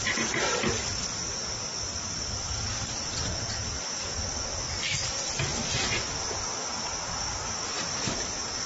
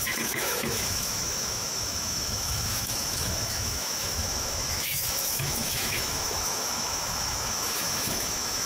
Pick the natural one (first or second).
first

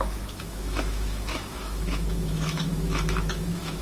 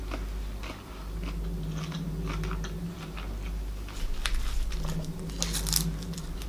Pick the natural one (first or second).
second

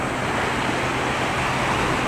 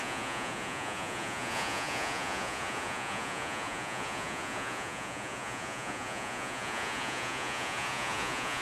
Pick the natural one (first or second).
first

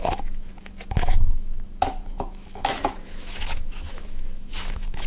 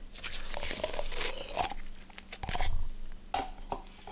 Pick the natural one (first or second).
second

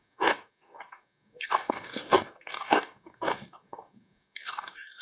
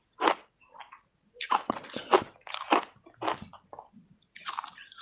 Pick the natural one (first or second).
second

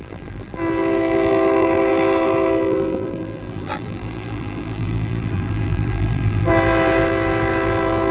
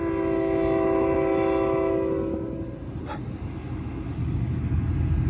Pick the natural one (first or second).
second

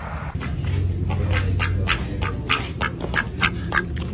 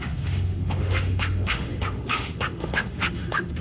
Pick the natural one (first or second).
first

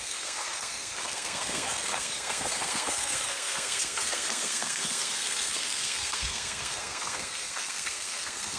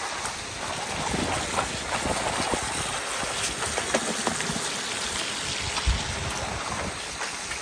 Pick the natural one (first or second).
second